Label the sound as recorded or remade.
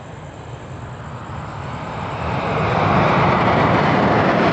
recorded